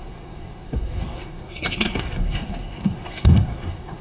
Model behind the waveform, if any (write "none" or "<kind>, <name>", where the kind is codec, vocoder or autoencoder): codec, SNAC